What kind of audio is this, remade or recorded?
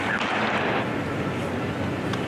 recorded